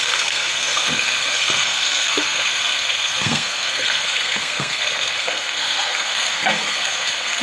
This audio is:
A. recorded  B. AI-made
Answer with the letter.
B